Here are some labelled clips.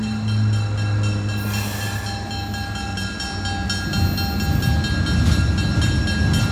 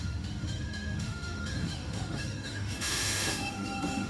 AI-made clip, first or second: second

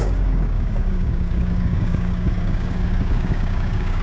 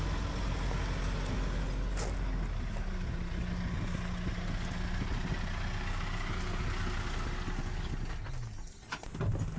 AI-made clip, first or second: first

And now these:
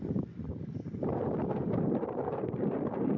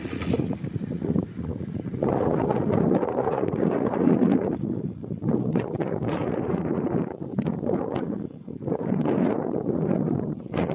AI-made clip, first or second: second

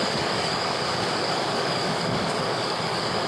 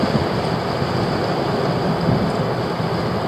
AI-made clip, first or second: first